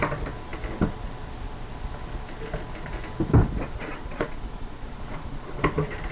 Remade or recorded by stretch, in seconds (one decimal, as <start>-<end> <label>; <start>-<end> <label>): 0.0-3.4 recorded; 3.4-5.6 remade; 5.6-6.1 recorded